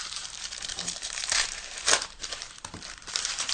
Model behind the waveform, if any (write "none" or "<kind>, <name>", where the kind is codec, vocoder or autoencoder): vocoder, BigVGAN v2